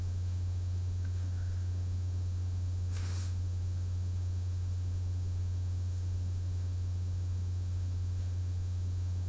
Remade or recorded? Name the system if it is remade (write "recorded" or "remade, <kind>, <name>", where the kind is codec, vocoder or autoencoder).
remade, autoencoder, DAC-VAE